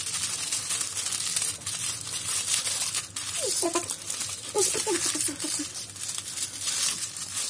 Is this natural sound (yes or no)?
yes